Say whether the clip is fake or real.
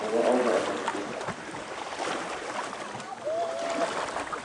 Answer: real